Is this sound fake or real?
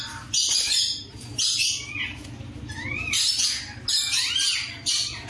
real